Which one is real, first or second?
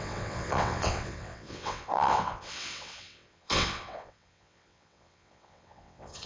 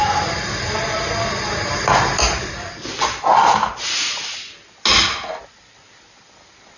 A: second